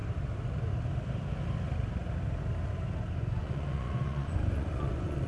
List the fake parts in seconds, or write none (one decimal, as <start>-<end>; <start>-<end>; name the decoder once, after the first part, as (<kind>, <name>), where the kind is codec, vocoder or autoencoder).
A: 3.2-5.3 (vocoder, Vocos)